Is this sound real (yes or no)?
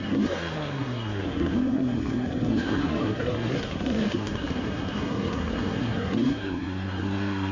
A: no